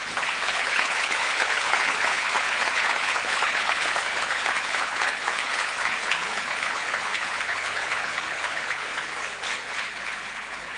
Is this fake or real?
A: fake